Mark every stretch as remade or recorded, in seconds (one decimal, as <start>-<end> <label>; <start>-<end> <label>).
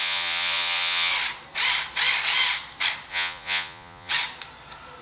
0.0-1.1 remade; 1.1-3.1 recorded; 3.1-4.1 remade; 4.1-5.0 recorded